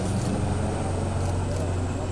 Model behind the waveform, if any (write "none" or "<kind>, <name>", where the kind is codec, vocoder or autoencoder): none